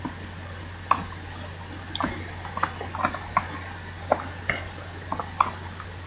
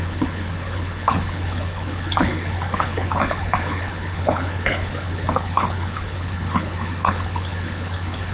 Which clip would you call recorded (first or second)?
first